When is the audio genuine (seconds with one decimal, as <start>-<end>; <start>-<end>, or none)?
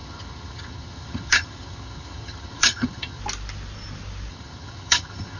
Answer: 3.2-4.3